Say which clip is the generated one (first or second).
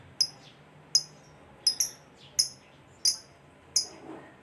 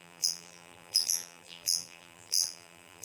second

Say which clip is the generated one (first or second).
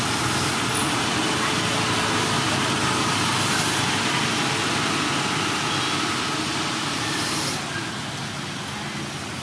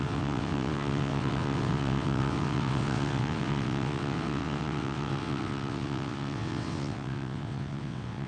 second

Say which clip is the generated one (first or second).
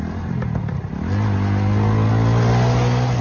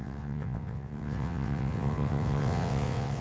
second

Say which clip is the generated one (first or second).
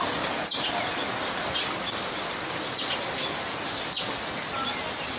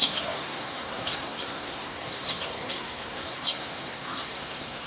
second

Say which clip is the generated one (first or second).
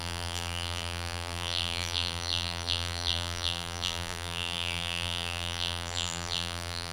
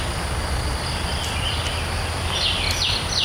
first